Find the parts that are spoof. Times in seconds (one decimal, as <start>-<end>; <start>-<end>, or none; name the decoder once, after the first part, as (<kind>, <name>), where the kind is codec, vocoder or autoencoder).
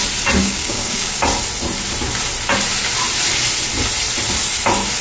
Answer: 0.4-1.2 (codec, DAC)